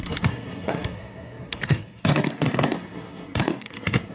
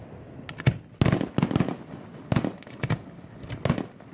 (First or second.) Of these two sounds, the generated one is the first